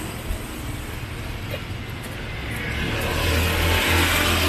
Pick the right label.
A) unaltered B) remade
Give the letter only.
A